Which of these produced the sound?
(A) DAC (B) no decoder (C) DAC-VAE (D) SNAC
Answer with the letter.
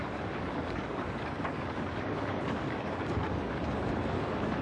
A